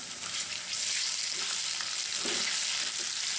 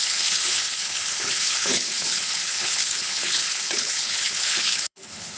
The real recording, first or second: first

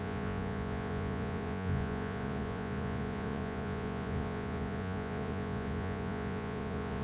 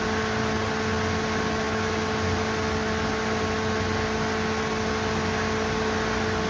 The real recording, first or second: second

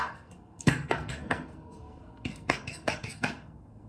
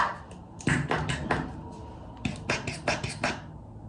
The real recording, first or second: second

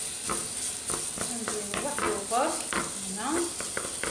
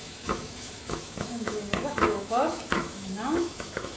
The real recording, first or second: first